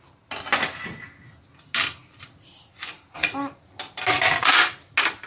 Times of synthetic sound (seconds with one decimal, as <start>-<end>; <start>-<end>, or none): none

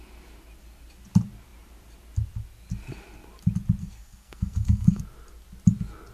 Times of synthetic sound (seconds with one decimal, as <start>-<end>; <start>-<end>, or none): 3.8-5.0

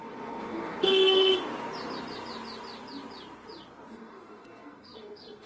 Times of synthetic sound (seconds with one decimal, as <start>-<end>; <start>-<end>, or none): 0.0-1.3; 3.9-5.5

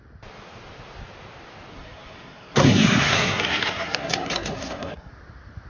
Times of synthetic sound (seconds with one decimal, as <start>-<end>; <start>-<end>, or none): 1.7-5.1

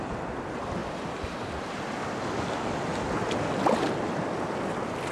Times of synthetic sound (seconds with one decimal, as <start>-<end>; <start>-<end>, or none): none

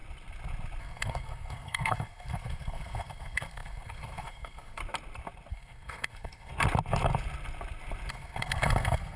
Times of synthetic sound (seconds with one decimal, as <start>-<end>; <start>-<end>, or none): 0.8-4.8; 5.5-6.5; 8.1-9.2